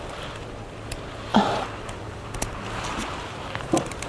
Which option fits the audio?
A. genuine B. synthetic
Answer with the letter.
A